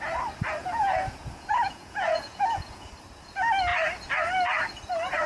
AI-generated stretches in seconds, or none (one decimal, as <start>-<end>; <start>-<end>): 0.6-2.9